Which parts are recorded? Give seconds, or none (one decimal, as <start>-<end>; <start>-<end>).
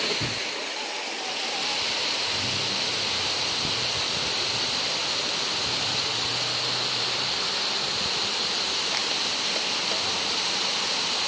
0.0-11.3